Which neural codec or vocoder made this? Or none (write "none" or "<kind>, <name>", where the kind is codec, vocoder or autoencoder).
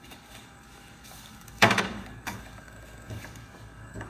codec, DAC